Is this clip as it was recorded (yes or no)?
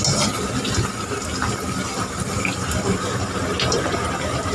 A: yes